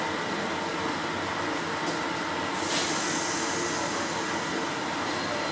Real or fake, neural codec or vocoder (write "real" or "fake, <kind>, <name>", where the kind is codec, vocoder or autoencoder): real